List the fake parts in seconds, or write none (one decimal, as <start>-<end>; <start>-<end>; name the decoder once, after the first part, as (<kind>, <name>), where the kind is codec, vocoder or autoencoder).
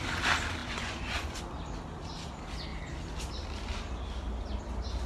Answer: 0.6-1.4 (vocoder, Vocos)